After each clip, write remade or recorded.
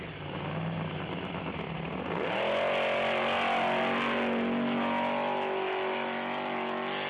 recorded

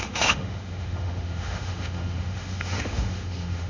remade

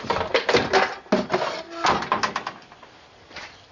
recorded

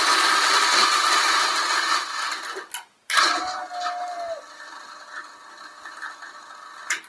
recorded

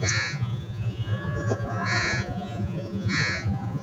remade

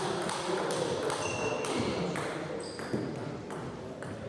recorded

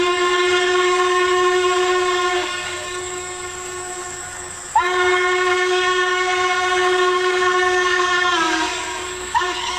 remade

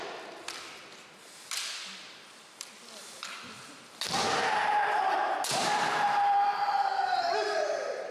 remade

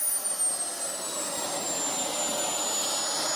recorded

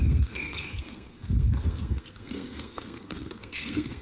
remade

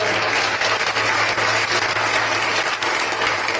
recorded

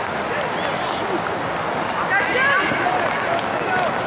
recorded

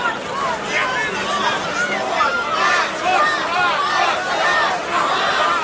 recorded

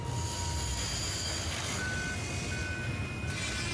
recorded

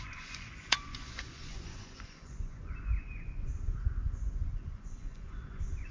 remade